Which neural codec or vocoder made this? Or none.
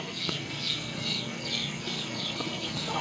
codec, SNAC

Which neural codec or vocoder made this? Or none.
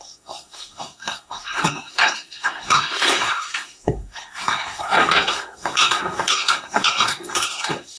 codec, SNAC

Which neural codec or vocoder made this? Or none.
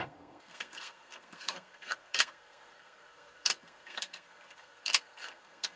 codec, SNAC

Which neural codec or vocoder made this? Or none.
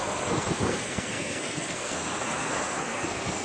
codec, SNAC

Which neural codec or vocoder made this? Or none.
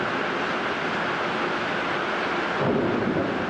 none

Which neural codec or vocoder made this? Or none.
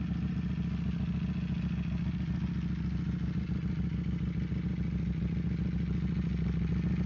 none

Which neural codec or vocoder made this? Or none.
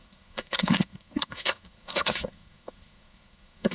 codec, SNAC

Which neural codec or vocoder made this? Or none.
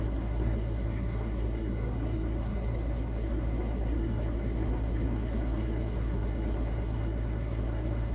codec, SNAC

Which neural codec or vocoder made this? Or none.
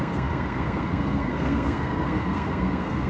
codec, SNAC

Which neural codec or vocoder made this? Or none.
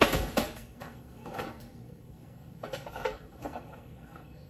codec, SNAC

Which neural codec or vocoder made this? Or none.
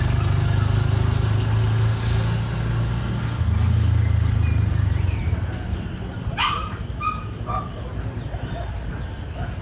none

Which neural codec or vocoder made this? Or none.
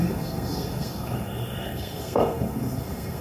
codec, SNAC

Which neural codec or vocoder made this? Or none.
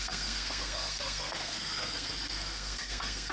codec, SNAC